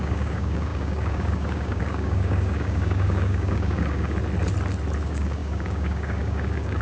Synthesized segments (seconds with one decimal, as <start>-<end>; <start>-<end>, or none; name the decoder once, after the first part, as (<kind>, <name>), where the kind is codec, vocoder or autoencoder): 0.0-4.2 (codec, DAC); 5.0-6.8